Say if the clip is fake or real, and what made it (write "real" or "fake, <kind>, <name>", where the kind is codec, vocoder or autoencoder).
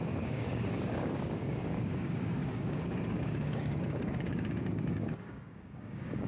fake, codec, DAC